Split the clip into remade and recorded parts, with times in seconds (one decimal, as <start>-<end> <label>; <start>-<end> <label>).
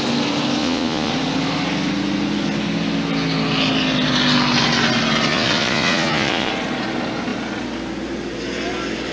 0.0-0.6 recorded; 0.6-1.1 remade; 1.1-5.3 recorded; 5.3-6.5 remade; 6.5-9.1 recorded